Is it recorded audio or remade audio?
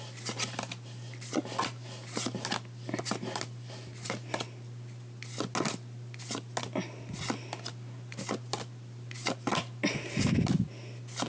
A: recorded